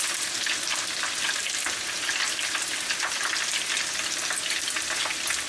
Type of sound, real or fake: real